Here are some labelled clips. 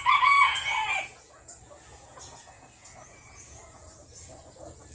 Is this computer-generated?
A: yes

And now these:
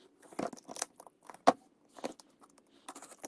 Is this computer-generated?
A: no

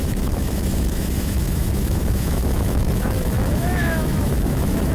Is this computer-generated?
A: yes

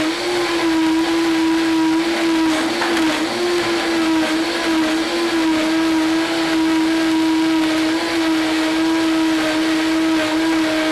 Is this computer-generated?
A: no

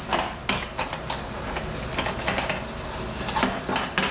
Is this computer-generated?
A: no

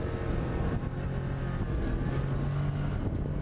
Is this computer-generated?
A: no